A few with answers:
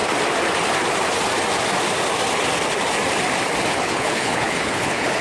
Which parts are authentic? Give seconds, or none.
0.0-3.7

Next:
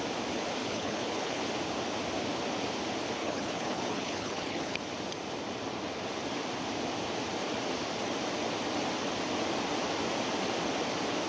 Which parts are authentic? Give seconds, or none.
0.0-0.6; 1.4-3.2; 4.8-11.3